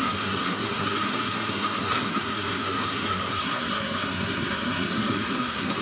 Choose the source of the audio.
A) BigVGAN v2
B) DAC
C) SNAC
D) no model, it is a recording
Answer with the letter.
C